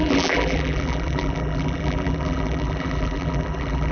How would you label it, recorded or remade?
remade